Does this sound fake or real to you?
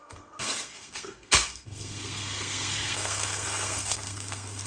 fake